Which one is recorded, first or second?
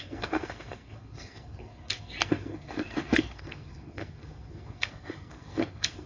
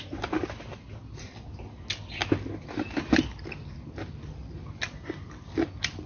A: second